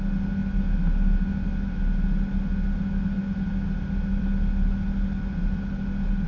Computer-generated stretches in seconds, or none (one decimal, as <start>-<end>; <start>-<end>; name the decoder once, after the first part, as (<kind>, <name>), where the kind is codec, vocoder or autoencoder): none